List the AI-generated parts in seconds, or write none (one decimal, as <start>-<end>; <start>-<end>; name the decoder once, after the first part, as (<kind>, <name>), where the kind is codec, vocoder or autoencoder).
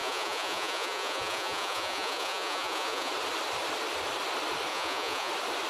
0.0-3.1 (vocoder, Vocos); 4.7-5.3